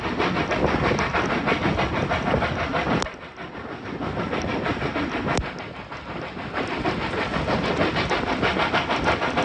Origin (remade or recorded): recorded